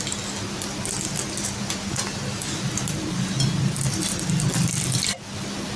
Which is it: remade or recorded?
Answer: recorded